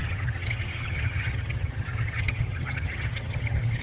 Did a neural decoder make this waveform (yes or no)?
yes